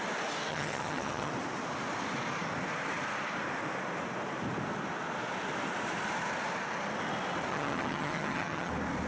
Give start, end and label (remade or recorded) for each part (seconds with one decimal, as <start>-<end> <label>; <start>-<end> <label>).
0.0-0.5 recorded; 0.5-1.3 remade; 1.3-7.5 recorded; 7.5-8.7 remade; 8.7-9.1 recorded